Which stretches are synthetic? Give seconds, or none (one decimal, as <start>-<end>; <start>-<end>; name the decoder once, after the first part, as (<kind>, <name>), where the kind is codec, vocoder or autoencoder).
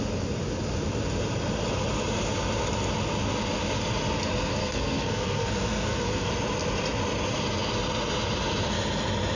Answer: 4.6-6.3 (codec, SNAC)